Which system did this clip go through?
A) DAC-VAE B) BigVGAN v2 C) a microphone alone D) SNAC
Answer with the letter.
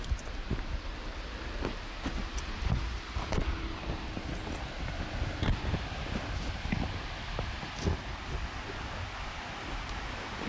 C